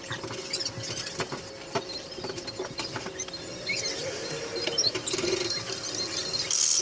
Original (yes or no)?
yes